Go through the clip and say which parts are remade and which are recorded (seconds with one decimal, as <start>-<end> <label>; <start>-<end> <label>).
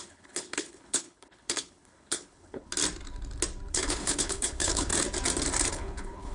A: 0.0-2.7 remade; 2.7-3.7 recorded; 3.7-4.9 remade; 4.9-5.7 recorded; 5.7-6.3 remade